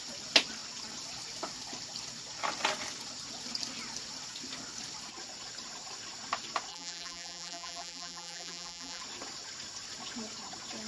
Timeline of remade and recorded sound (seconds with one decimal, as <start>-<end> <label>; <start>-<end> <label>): 0.0-6.7 recorded; 6.7-9.0 remade; 9.0-10.9 recorded